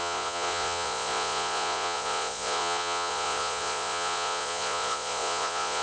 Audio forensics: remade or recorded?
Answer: remade